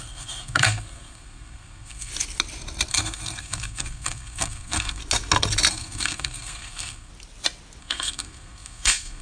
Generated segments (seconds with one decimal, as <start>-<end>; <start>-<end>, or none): 0.0-2.1; 2.9-5.0; 5.7-7.1; 7.8-9.2